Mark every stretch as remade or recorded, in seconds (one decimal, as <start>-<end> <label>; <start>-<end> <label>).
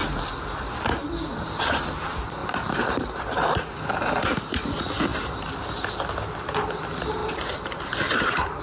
0.0-0.8 remade; 0.8-2.4 recorded; 2.4-4.1 remade; 4.1-7.2 recorded; 7.2-8.6 remade